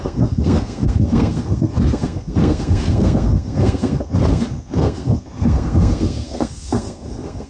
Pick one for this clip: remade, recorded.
remade